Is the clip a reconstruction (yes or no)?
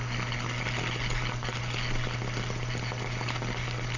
no